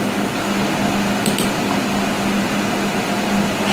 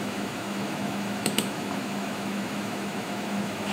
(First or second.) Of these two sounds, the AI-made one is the second